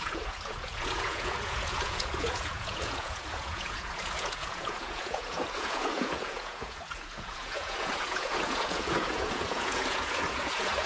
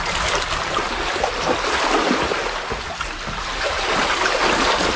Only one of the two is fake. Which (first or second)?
first